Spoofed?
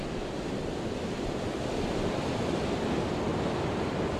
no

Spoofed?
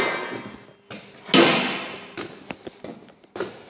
no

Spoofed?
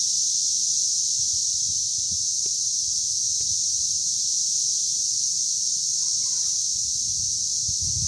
no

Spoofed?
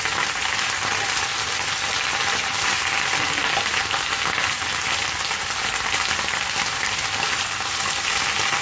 no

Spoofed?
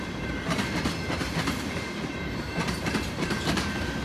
yes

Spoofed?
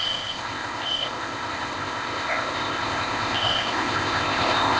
yes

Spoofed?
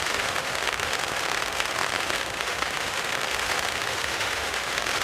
yes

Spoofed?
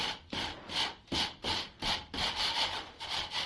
no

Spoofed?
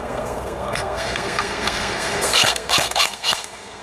yes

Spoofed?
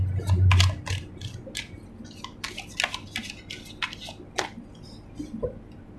no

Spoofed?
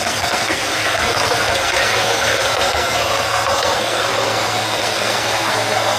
yes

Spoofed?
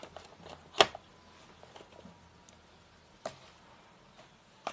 no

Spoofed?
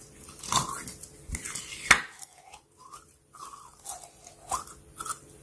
no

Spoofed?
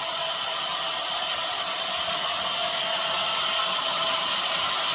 no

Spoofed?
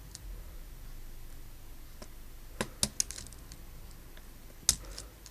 no